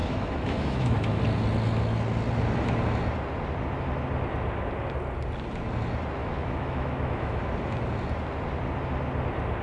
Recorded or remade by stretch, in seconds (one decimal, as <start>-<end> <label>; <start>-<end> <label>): 0.0-1.2 remade; 1.2-6.2 recorded; 6.2-7.4 remade; 7.4-9.6 recorded